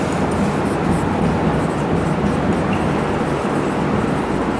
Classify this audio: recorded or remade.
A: recorded